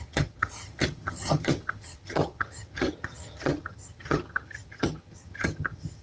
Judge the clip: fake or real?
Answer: fake